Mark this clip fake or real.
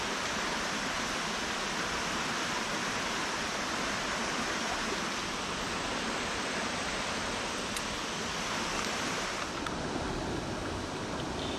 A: real